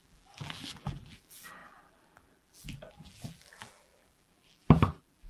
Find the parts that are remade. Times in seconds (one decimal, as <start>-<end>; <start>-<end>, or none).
0.0-5.3